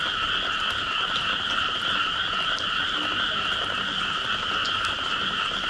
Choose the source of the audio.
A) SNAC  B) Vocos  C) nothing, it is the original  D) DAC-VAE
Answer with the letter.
C